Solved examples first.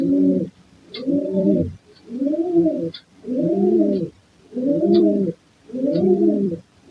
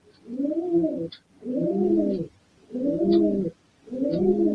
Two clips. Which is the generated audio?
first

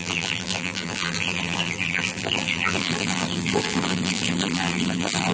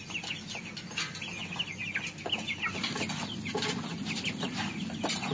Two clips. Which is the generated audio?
first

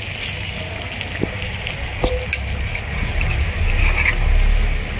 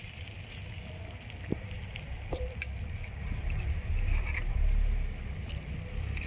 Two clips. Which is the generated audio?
second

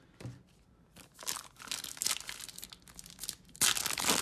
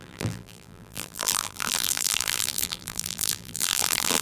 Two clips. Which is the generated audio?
second